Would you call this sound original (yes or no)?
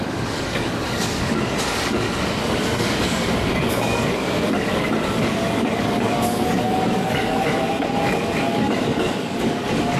no